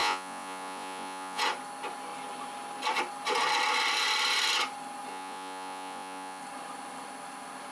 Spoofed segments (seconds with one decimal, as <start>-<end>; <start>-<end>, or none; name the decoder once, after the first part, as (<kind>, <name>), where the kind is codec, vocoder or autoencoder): 0.0-1.4 (vocoder, Vocos); 5.1-6.4